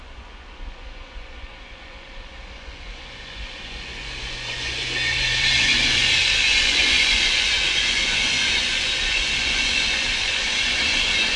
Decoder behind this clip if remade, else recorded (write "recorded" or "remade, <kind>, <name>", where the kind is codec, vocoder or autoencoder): remade, vocoder, Vocos